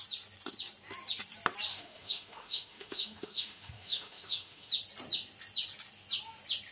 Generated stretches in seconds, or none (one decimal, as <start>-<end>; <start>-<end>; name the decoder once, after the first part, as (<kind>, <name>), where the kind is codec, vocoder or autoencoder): 1.7-4.7 (autoencoder, DAC-VAE)